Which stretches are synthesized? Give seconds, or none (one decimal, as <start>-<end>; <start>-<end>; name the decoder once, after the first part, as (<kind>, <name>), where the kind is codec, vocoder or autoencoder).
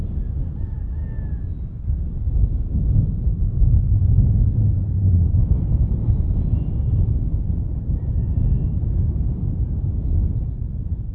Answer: none